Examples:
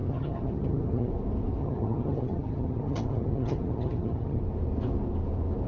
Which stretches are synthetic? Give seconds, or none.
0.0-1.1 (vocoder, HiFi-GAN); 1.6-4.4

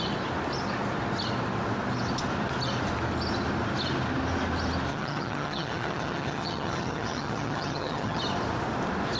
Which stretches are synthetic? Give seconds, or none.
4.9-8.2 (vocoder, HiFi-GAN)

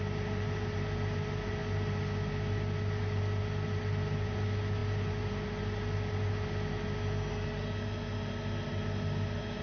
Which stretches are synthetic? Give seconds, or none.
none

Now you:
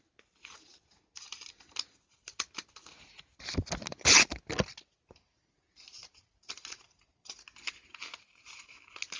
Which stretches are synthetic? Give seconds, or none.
none